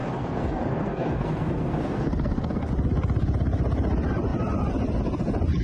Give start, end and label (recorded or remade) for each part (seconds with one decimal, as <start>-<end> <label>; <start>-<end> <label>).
0.0-2.7 remade; 2.7-5.6 recorded